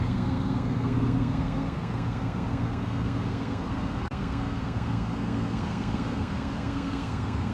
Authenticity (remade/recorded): remade